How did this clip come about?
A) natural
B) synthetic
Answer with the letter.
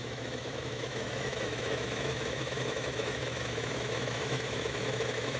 B